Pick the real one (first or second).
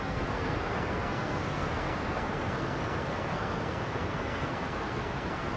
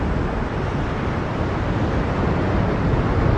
second